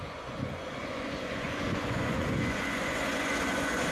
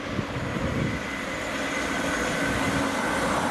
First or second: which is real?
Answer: second